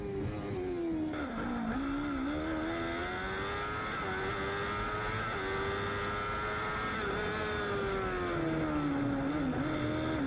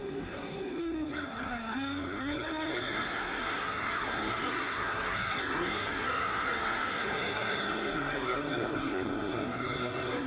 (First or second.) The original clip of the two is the first